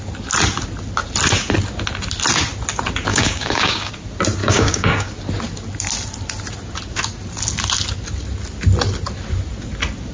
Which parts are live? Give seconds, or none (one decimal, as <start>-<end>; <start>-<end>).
0.0-3.1; 3.9-4.4; 5.1-10.1